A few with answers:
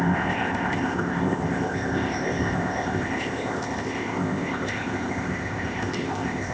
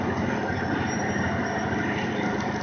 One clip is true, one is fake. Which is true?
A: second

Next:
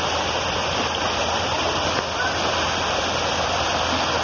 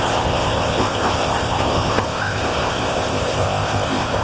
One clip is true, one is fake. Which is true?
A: first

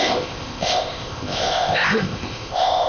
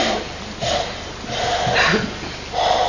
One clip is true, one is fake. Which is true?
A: second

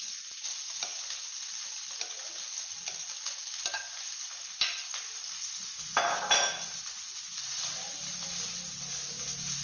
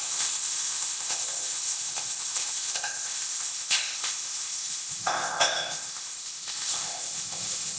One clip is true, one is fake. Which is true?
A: first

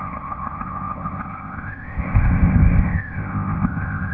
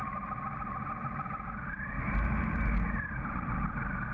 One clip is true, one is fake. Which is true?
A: second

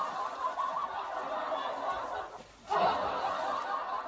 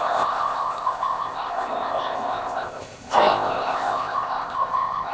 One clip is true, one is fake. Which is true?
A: first